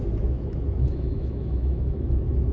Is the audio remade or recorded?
remade